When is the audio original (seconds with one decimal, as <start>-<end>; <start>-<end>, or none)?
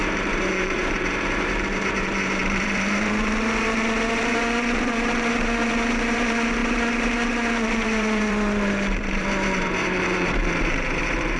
none